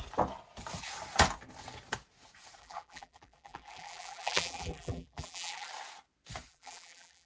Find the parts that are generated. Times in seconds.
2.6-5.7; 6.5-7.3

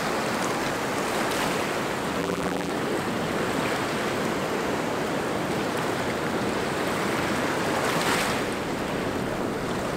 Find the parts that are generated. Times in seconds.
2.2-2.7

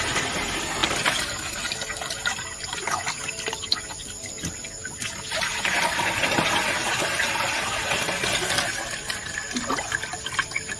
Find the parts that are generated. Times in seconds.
0.8-1.6

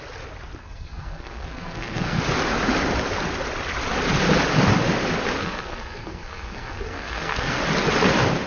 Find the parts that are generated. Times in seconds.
0.6-2.2; 5.4-7.6